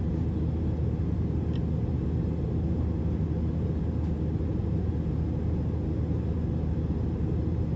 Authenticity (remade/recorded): recorded